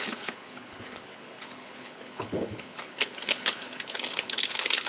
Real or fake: fake